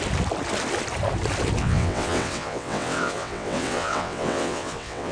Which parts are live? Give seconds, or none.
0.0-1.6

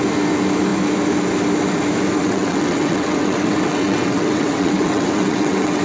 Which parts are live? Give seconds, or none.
0.0-2.2

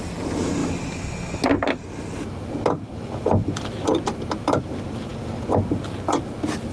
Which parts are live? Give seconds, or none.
0.0-6.7

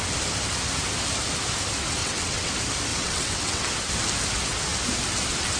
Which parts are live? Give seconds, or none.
0.0-2.0; 2.5-2.9; 3.6-5.6